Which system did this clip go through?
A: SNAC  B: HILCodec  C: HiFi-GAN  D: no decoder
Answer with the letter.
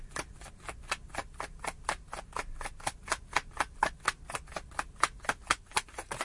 D